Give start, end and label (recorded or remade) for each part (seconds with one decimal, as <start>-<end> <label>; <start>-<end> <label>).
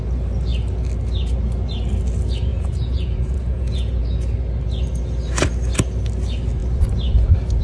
0.0-2.5 recorded; 2.5-4.0 remade; 4.0-7.6 recorded